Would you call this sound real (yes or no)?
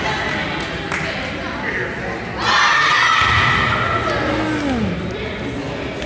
yes